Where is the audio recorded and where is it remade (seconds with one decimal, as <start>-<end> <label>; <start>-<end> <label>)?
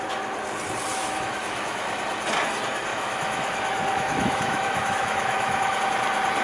0.0-0.9 recorded; 0.9-2.0 remade; 2.0-2.9 recorded; 2.9-5.8 remade; 5.8-6.4 recorded